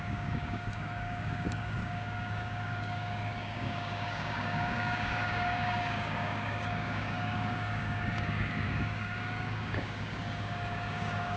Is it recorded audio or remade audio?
remade